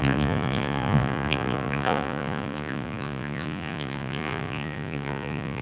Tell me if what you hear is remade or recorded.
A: remade